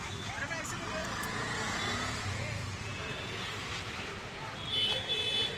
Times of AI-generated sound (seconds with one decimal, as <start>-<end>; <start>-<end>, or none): 1.0-3.9